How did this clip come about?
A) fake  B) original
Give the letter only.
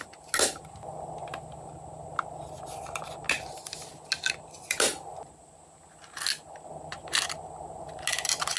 B